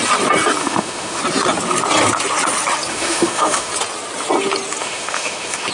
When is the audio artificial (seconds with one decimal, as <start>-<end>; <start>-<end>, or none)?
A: 0.6-1.2; 2.9-3.7; 4.8-5.7